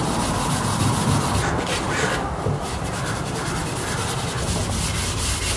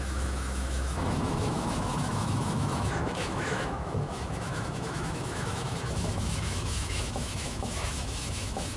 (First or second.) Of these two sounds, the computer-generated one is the second